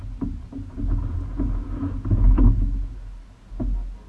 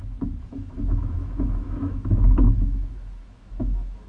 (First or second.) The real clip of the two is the first